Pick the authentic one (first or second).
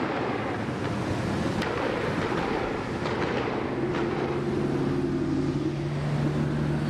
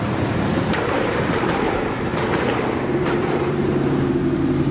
first